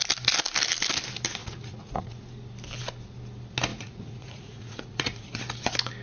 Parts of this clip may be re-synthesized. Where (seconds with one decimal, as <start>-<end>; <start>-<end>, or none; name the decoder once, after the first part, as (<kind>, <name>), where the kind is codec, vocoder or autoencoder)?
1.4-2.2 (vocoder, Vocos); 3.7-5.4